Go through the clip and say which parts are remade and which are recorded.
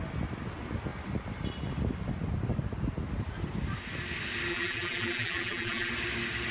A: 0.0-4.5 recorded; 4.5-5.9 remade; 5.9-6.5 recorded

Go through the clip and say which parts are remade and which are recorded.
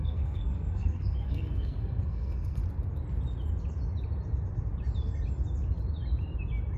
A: 0.0-2.6 remade; 2.6-6.8 recorded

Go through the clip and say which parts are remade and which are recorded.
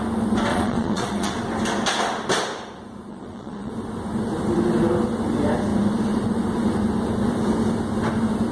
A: 0.0-0.5 recorded; 0.5-1.3 remade; 1.3-3.1 recorded; 3.1-3.7 remade; 3.7-8.5 recorded